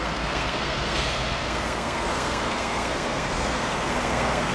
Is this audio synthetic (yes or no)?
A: yes